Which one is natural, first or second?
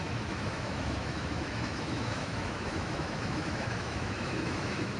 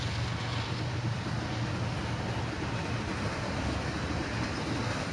second